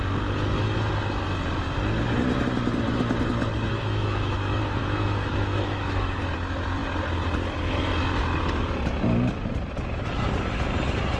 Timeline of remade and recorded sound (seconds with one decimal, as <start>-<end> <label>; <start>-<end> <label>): 0.0-3.7 recorded; 3.7-6.2 remade; 6.2-11.2 recorded